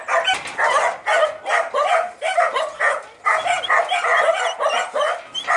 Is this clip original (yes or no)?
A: yes